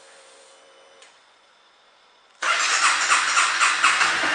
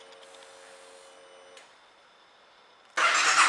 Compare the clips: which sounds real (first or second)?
second